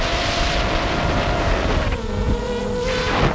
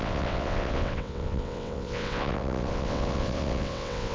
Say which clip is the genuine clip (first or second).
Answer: first